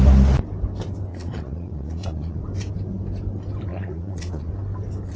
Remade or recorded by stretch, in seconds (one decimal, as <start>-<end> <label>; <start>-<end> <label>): 0.0-1.1 recorded; 1.1-2.4 remade; 2.4-3.7 recorded; 3.7-4.5 remade; 4.5-5.2 recorded